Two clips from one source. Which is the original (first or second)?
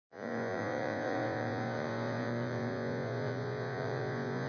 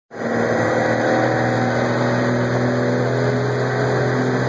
second